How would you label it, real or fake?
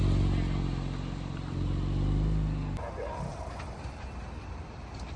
real